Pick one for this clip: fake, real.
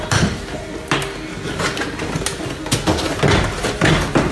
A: real